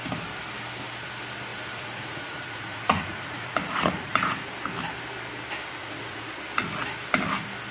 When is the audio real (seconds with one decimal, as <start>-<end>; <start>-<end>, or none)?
0.0-1.5; 4.4-5.8; 6.4-7.7